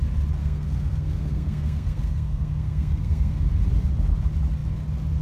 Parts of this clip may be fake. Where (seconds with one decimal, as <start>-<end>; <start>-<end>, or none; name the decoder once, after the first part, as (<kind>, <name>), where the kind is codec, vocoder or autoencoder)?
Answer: 0.4-3.5 (codec, SNAC)